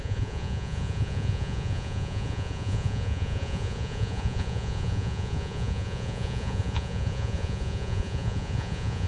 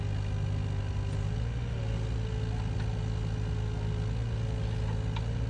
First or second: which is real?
second